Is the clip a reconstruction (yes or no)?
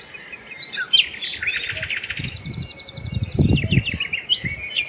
no